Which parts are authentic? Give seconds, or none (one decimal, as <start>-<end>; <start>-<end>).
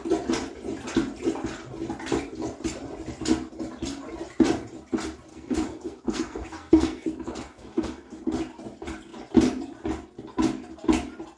0.0-5.3; 8.2-11.4